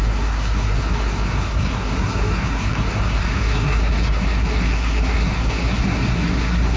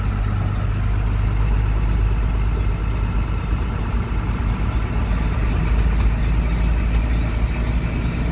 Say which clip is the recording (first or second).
second